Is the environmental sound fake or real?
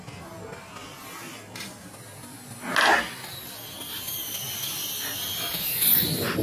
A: real